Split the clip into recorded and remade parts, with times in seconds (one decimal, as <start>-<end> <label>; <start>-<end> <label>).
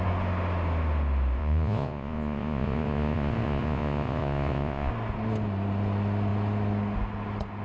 0.0-1.4 recorded; 1.4-4.9 remade; 4.9-7.6 recorded